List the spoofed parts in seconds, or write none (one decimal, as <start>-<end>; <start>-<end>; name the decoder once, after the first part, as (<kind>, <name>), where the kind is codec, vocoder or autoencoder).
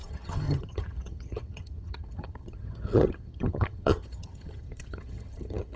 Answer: 0.0-5.8 (vocoder, HiFi-GAN)